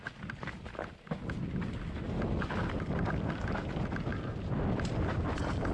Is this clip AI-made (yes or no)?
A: no